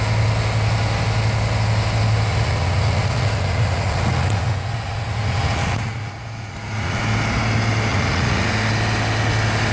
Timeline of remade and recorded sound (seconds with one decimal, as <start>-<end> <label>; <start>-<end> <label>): 0.0-2.3 recorded; 2.3-7.0 remade; 7.0-7.9 recorded; 7.9-8.5 remade; 8.5-9.7 recorded